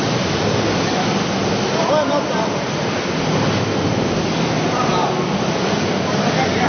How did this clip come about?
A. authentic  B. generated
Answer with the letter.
A